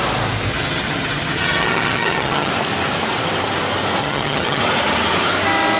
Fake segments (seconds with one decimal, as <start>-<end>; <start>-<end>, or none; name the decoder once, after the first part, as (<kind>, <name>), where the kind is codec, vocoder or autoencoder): 0.5-2.5 (vocoder, HiFi-GAN); 4.0-4.6